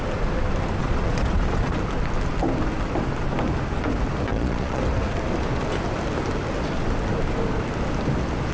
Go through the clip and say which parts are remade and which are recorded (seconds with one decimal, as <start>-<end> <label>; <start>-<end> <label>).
0.0-0.8 recorded; 0.8-1.8 remade; 1.8-4.3 recorded; 4.3-4.8 remade; 4.8-8.5 recorded